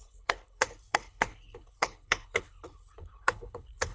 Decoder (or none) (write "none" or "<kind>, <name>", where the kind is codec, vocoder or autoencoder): codec, HILCodec